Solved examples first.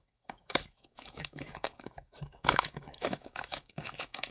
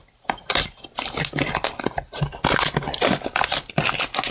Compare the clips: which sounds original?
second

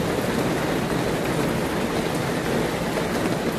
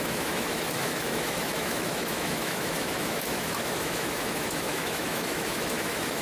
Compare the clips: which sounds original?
first